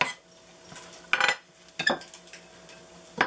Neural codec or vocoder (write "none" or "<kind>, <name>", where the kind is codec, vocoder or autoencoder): none